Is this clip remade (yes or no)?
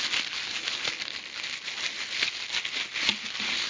no